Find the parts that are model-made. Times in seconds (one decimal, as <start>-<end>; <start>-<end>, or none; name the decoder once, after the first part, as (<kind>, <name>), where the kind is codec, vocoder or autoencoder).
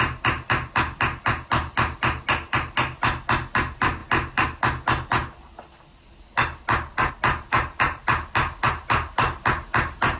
none